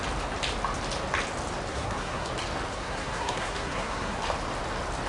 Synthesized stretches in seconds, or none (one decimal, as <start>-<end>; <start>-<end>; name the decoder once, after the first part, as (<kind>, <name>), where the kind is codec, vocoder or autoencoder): 1.7-2.3 (codec, SNAC); 2.7-4.2

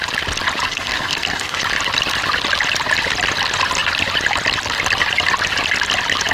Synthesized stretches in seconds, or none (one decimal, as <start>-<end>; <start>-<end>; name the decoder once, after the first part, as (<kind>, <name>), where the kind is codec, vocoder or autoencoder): 0.7-1.6 (codec, SNAC)

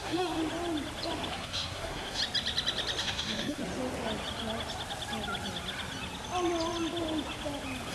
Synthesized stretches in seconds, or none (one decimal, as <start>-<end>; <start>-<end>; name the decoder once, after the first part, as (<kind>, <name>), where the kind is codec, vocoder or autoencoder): 0.0-0.4 (codec, SNAC); 1.3-2.2; 3.0-3.6

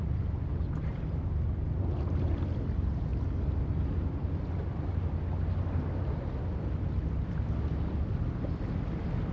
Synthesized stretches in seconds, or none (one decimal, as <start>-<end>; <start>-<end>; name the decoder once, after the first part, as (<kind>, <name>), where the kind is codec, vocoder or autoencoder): none